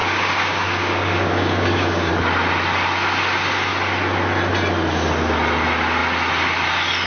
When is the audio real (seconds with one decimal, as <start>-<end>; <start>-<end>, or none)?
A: 2.1-7.1